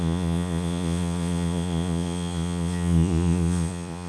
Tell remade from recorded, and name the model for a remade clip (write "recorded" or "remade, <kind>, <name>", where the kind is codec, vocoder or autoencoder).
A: remade, vocoder, Vocos